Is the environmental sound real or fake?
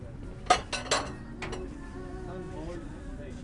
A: real